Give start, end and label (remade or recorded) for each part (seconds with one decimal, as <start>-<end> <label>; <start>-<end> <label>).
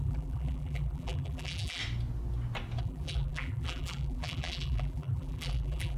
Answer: 0.0-1.8 remade; 1.8-2.8 recorded; 2.8-6.0 remade